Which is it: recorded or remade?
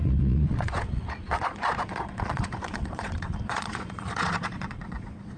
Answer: remade